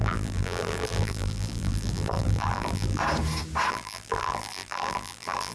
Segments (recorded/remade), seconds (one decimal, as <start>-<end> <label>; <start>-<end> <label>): 0.0-3.0 remade; 3.0-3.7 recorded; 3.7-5.5 remade